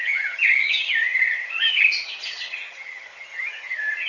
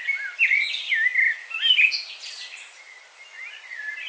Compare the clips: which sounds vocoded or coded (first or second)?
first